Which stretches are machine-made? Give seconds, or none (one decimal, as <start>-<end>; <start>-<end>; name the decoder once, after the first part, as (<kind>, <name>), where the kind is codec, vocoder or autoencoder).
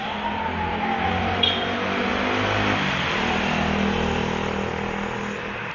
none